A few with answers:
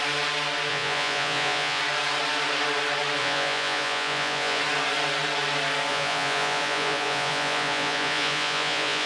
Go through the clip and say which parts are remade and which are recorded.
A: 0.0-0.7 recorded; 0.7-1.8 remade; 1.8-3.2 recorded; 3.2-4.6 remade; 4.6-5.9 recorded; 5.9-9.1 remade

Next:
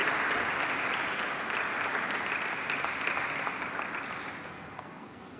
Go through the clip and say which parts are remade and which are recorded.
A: 0.0-4.4 recorded; 4.4-5.4 remade

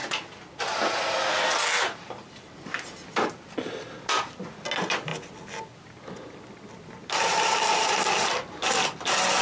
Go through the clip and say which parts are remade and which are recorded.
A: 0.0-9.4 recorded

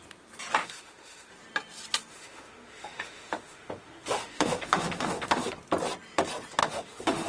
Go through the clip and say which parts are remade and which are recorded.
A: 0.0-0.6 recorded; 0.6-1.3 remade; 1.3-2.1 recorded; 2.1-5.5 remade; 5.5-6.6 recorded; 6.6-7.3 remade

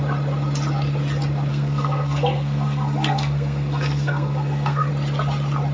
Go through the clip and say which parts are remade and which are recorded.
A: 0.0-1.5 recorded; 1.5-4.9 remade; 4.9-5.7 recorded